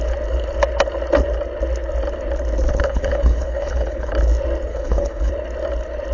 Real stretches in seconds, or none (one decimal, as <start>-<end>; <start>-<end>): 0.0-2.7; 4.1-4.7; 5.3-6.1